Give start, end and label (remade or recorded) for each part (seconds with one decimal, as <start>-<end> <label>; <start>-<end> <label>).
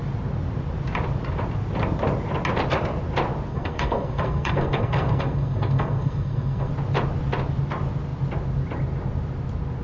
0.0-3.5 recorded; 3.5-6.7 remade; 6.7-9.8 recorded